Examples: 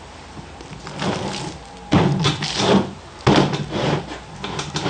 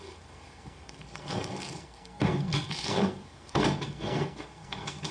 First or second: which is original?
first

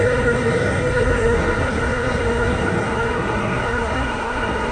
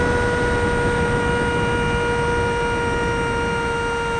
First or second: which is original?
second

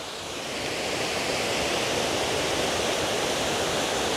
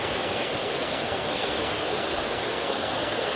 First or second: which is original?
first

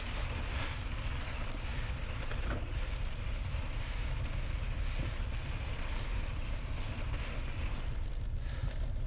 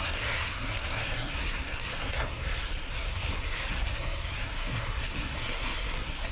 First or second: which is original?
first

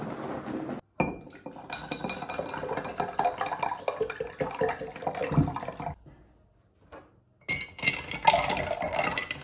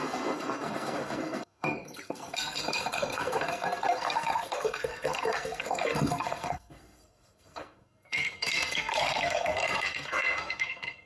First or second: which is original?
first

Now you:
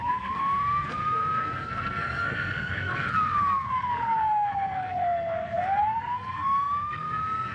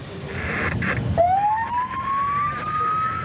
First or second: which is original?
second